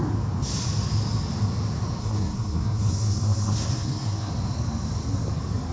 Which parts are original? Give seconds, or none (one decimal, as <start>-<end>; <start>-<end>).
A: 0.0-2.0; 4.3-5.7

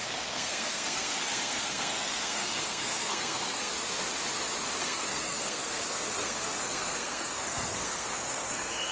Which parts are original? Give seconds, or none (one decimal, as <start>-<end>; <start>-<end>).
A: 3.7-4.8

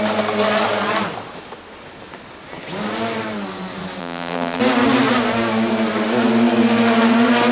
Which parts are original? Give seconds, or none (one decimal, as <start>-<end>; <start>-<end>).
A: 0.0-4.0; 4.6-7.5

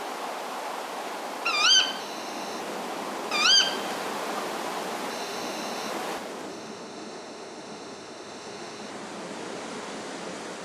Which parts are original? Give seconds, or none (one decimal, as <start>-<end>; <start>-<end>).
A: 0.0-2.0; 2.6-5.1; 5.9-6.5; 8.9-10.6

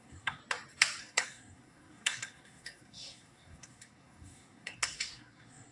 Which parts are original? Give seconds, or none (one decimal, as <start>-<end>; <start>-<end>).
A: 0.4-1.0

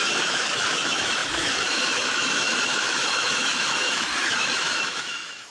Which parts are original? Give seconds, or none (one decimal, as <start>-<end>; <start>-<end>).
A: none

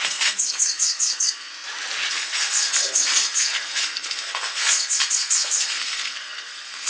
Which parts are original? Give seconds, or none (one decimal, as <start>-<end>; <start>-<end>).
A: 1.5-2.1